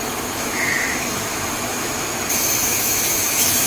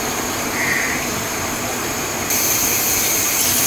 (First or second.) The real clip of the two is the second